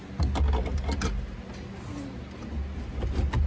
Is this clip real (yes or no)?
yes